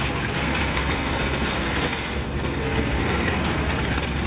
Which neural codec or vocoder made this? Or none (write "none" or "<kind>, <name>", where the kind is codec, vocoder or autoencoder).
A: codec, SNAC